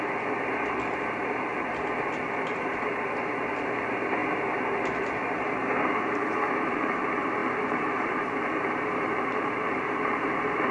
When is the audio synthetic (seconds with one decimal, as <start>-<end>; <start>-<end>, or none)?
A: 0.0-4.2; 5.8-10.7